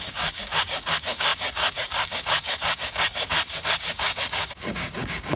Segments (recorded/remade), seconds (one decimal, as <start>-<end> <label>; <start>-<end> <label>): 0.0-5.4 remade